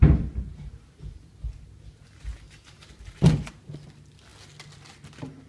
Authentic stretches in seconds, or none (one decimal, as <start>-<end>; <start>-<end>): 0.0-0.5; 3.7-5.5